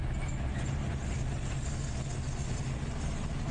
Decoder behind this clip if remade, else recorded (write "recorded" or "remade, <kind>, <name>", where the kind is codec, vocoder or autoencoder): recorded